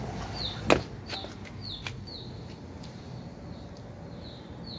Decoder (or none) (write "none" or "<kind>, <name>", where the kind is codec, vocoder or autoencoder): none